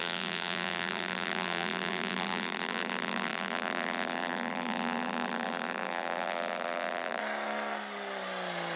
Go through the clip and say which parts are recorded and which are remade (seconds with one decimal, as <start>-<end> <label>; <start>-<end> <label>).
0.0-7.2 remade; 7.2-8.8 recorded